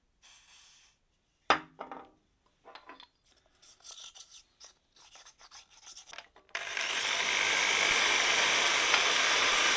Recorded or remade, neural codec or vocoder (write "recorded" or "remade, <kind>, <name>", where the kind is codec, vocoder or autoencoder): recorded